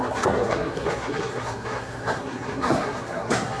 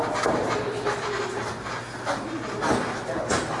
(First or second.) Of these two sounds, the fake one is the first